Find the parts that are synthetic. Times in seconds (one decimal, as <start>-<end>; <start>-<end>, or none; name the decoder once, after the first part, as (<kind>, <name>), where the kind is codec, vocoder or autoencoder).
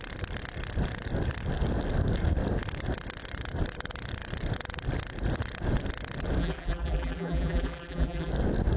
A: 6.4-8.3 (vocoder, BigVGAN v2)